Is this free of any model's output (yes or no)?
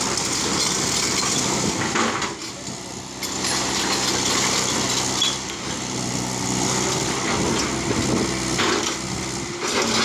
yes